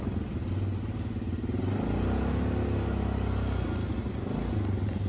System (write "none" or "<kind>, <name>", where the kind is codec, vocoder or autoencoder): none